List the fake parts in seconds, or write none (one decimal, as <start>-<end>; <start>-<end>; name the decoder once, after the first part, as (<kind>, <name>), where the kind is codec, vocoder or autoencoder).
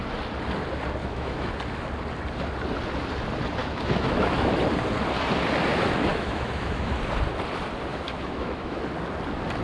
1.0-1.5 (autoencoder, DAC-VAE); 3.6-4.5; 6.1-6.9; 7.9-8.8